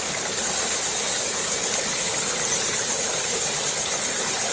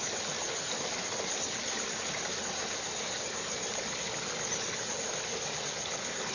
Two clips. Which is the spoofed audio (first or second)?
first